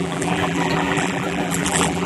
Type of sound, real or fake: fake